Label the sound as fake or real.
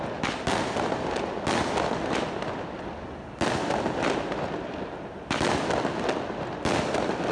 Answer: real